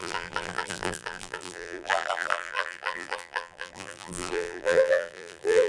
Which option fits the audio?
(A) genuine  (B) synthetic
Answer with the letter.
B